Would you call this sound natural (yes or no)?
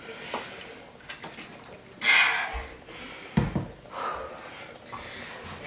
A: yes